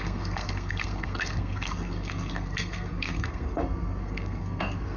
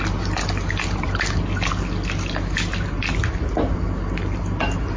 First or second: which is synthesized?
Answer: first